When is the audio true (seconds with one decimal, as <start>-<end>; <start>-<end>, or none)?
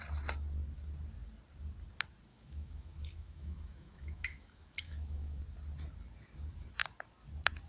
0.0-2.3; 5.4-7.7